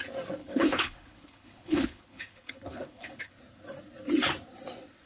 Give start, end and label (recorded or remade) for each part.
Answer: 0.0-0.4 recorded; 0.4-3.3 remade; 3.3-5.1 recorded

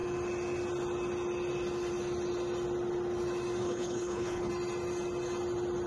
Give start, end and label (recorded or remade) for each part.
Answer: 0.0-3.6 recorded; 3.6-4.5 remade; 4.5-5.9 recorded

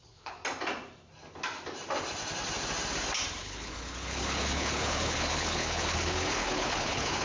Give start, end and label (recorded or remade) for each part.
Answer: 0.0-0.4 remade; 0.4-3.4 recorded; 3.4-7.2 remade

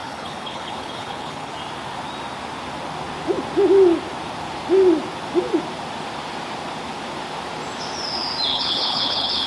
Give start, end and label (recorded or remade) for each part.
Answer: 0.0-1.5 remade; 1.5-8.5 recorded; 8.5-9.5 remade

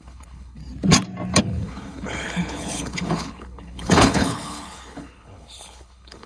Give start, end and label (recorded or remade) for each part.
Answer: 0.0-0.6 remade; 0.6-1.4 recorded; 1.4-6.3 remade

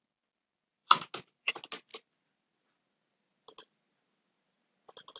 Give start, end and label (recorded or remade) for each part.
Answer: 0.0-5.2 recorded